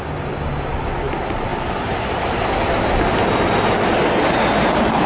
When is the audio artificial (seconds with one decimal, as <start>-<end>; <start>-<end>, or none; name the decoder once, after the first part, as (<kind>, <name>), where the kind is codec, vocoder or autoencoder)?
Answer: none